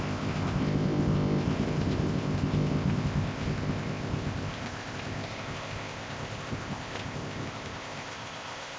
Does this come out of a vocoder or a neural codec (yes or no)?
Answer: yes